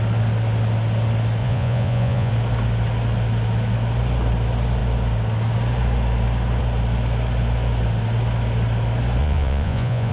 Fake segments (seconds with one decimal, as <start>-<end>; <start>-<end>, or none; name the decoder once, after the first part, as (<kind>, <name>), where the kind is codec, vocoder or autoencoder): 1.4-2.3 (vocoder, Vocos); 9.2-10.1